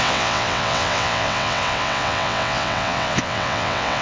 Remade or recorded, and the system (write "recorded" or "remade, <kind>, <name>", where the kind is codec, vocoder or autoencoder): remade, vocoder, WaveNeXt